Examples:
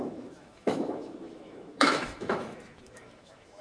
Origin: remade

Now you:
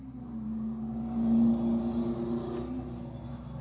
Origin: recorded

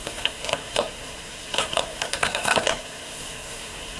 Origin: remade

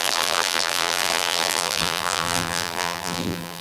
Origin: remade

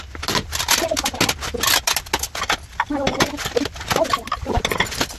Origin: recorded